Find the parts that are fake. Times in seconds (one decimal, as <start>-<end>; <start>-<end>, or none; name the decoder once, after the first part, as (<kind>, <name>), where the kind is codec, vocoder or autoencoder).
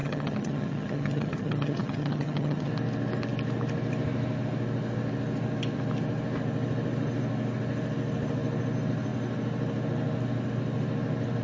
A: 0.0-2.7 (vocoder, HiFi-GAN)